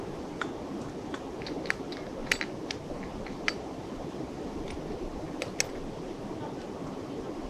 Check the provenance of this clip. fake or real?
real